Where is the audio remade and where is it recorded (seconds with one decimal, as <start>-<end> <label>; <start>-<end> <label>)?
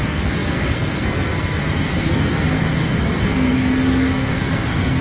0.0-5.0 remade